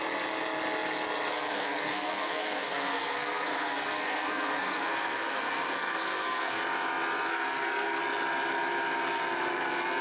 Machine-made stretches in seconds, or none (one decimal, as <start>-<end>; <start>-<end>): 1.3-6.6; 7.3-8.0